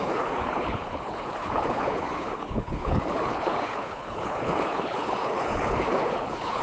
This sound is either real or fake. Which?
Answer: fake